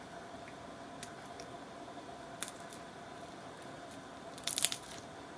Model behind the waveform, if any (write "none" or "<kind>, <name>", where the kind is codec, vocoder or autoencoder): vocoder, BigVGAN v2